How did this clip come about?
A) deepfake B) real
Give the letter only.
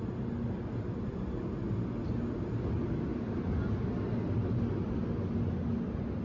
B